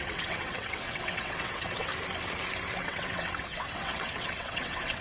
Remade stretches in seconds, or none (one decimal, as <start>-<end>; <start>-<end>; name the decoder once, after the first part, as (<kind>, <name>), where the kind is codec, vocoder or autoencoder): 0.0-1.9 (vocoder, WaveNeXt); 2.8-5.0

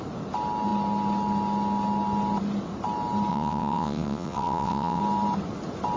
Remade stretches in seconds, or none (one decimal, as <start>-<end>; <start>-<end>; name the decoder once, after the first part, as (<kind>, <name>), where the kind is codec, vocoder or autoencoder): 3.3-5.0 (vocoder, WaveNeXt)